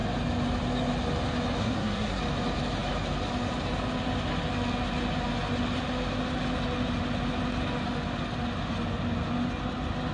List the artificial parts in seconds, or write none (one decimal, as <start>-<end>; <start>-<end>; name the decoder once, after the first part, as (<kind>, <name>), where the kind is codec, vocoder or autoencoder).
1.6-2.2 (codec, SNAC)